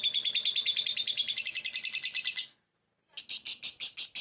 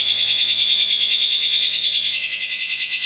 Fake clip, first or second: second